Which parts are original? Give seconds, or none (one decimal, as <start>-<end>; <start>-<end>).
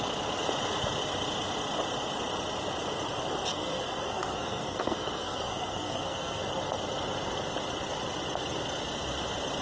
0.0-3.5; 6.4-9.6